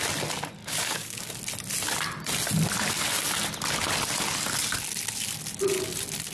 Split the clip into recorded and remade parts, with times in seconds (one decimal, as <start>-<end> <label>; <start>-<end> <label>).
0.0-0.6 recorded; 0.6-1.3 remade; 1.3-6.3 recorded